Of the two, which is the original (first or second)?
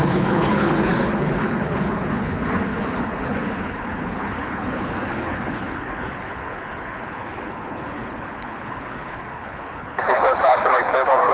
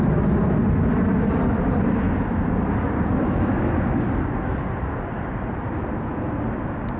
second